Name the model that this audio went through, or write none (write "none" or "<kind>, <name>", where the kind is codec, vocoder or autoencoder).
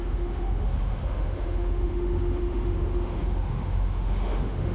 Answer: autoencoder, DAC-VAE